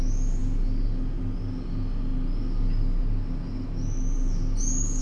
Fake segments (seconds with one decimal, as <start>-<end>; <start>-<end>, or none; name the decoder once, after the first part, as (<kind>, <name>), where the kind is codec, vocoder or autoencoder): none